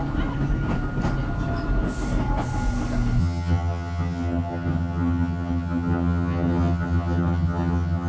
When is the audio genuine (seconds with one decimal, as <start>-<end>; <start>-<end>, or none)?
0.0-3.2